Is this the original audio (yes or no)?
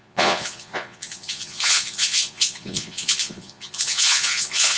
no